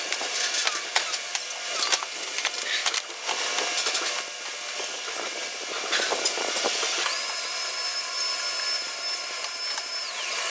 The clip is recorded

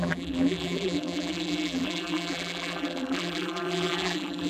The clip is remade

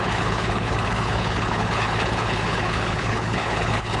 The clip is remade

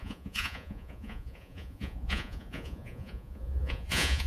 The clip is remade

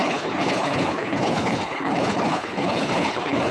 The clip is remade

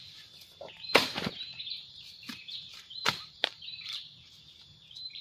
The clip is remade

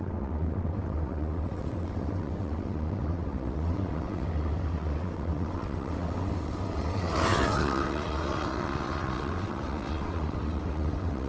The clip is remade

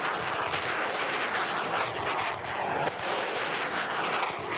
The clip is recorded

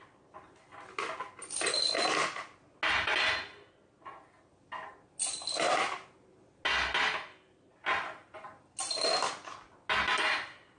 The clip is recorded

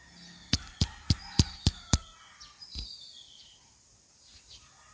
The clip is recorded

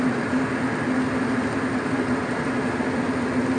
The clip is recorded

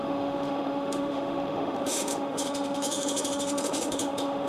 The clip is remade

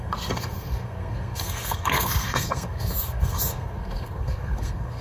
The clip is remade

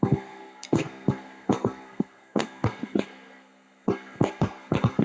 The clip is remade